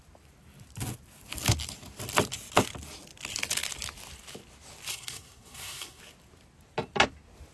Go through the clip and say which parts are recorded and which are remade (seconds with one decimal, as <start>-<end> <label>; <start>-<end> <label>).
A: 0.0-4.9 recorded; 4.9-6.0 remade; 6.0-7.5 recorded